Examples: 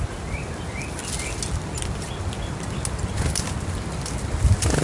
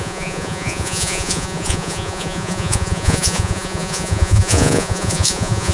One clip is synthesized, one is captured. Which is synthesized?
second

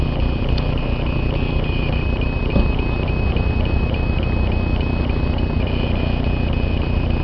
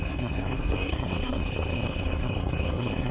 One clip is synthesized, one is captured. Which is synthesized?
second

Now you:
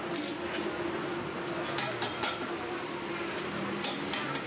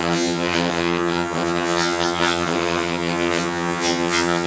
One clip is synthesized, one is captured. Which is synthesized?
second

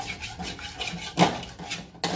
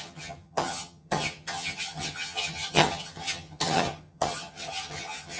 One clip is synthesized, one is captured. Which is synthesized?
second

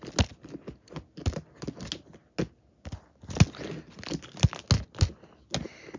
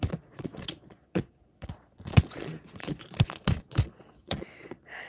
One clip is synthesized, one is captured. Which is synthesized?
second